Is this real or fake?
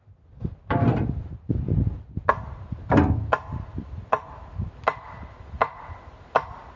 real